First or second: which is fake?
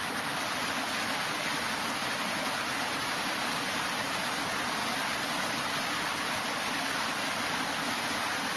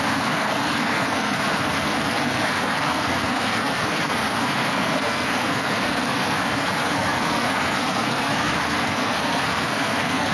second